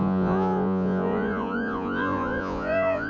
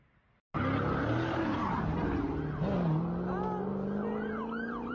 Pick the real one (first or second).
second